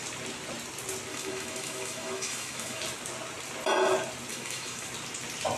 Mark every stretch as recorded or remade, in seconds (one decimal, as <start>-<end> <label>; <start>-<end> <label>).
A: 0.0-1.1 recorded; 1.1-2.8 remade; 2.8-4.3 recorded; 4.3-4.9 remade; 4.9-5.6 recorded